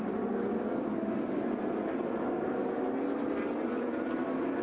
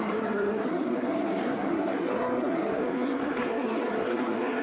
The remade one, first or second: second